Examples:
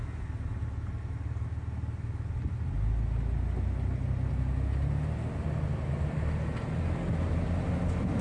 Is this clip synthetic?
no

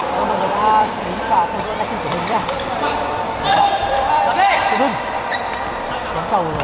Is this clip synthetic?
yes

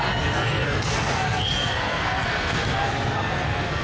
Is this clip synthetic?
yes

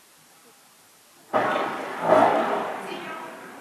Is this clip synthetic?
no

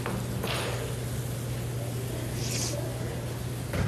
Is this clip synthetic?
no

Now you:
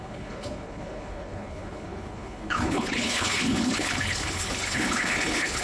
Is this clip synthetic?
yes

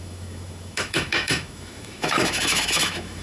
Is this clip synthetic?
yes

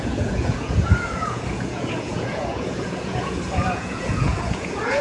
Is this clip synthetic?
yes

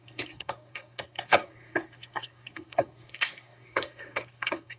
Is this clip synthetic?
yes